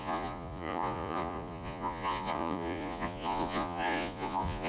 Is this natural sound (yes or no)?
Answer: no